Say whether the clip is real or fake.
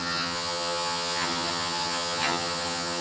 fake